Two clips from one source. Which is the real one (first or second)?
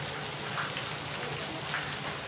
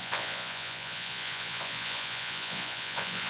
first